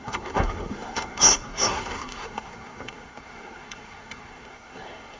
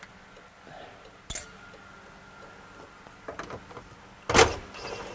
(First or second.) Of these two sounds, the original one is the second